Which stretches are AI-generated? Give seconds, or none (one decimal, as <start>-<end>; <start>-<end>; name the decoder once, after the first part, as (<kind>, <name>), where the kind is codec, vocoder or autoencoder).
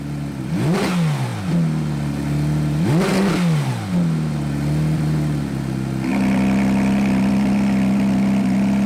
none